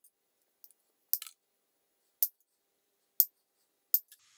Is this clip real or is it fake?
real